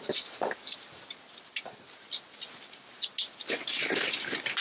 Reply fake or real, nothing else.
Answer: real